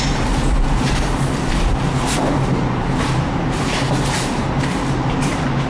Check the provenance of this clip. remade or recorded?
remade